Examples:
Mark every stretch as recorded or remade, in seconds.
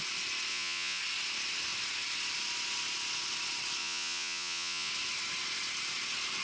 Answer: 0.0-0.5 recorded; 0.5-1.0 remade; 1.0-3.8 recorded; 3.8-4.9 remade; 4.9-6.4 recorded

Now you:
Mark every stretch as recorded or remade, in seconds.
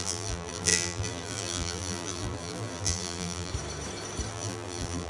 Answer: 0.0-3.5 remade; 3.5-4.3 recorded; 4.3-5.1 remade